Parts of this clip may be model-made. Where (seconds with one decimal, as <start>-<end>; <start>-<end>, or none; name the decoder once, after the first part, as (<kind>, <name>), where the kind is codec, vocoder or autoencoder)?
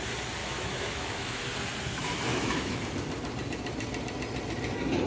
0.4-1.4 (autoencoder, DAC-VAE); 2.3-2.8